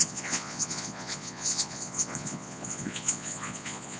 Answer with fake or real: fake